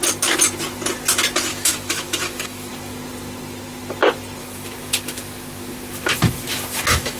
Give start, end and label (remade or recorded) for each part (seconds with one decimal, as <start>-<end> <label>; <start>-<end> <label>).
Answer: 0.0-1.5 recorded; 1.5-2.7 remade; 2.7-4.4 recorded; 4.4-7.2 remade